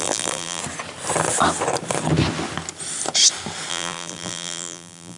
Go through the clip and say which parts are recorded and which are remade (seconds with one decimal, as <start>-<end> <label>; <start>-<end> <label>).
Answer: 0.0-0.6 remade; 0.6-3.7 recorded; 3.7-5.2 remade